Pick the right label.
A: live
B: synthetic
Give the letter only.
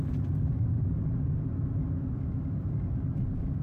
A